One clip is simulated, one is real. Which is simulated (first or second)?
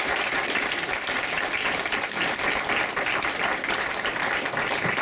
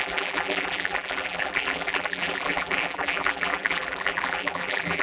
second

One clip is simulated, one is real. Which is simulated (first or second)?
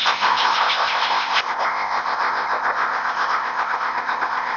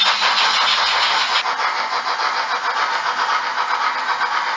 first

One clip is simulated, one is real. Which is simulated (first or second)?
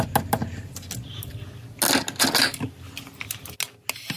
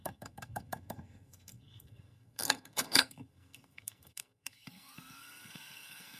second